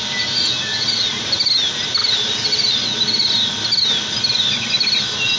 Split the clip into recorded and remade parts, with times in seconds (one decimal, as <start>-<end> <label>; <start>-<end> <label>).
0.0-5.4 recorded